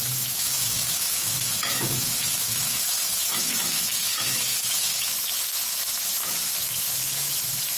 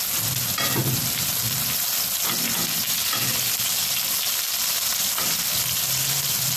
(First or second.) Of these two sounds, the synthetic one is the first